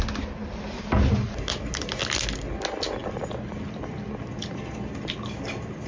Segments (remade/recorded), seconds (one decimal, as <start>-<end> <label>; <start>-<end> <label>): 0.0-5.9 recorded